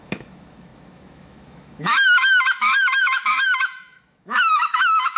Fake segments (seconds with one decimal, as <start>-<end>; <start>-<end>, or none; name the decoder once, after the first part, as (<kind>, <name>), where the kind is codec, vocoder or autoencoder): 0.0-5.2 (autoencoder, DAC-VAE)